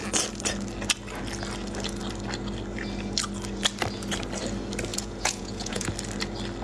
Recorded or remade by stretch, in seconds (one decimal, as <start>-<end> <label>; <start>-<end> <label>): 0.0-4.9 recorded; 4.9-5.9 remade; 5.9-6.6 recorded